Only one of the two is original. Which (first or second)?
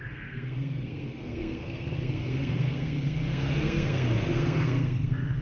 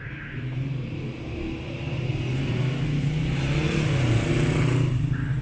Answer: second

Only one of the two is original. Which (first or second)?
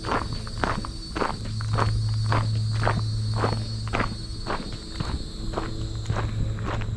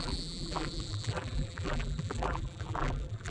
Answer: first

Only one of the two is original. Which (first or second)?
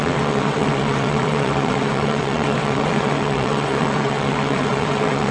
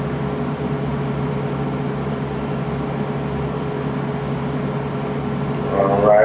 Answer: second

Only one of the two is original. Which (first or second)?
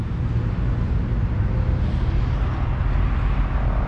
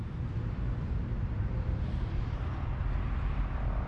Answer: first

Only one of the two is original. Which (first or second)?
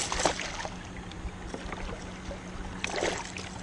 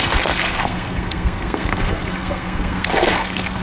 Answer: first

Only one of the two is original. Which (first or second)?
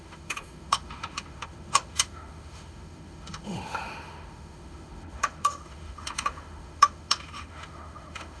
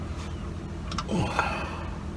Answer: second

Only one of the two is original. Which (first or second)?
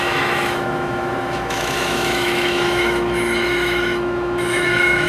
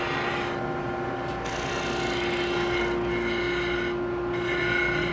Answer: second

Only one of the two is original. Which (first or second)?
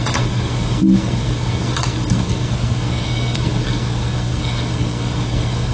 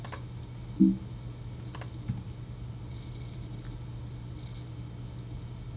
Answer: second